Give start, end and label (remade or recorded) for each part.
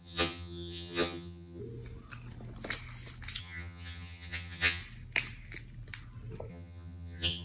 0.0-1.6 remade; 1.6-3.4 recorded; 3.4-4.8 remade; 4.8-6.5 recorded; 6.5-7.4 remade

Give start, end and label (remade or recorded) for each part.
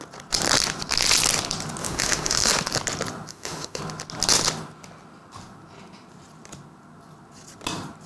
0.0-1.8 recorded; 1.8-2.5 remade; 2.5-3.3 recorded; 3.3-3.8 remade; 3.8-8.1 recorded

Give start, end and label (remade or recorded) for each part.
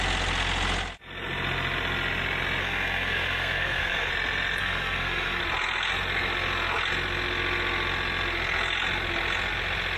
0.0-2.6 recorded; 2.6-4.1 remade; 4.1-4.6 recorded; 4.6-5.4 remade; 5.4-10.0 recorded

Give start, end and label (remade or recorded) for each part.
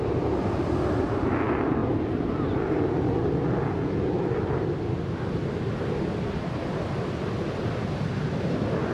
0.0-8.9 recorded